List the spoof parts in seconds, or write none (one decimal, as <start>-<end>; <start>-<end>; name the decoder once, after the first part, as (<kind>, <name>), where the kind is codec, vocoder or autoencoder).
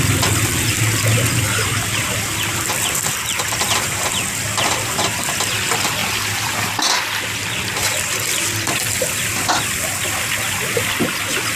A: none